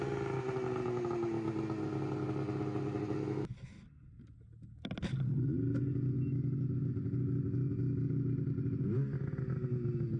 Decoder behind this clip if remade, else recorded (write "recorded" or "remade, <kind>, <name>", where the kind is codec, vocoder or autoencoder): recorded